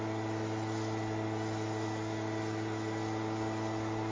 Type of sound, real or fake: real